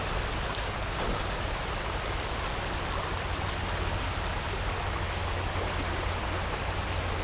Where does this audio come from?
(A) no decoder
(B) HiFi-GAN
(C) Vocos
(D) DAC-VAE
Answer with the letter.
A